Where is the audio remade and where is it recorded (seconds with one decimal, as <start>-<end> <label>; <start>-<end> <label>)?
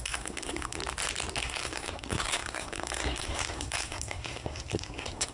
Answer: 0.0-0.8 remade; 0.8-1.4 recorded; 1.4-5.3 remade